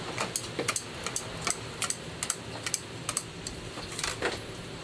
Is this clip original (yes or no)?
yes